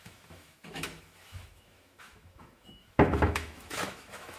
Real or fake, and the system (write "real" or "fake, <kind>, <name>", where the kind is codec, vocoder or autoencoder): fake, autoencoder, DAC-VAE